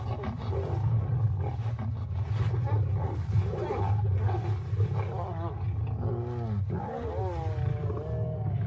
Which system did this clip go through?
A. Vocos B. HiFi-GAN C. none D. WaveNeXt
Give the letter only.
C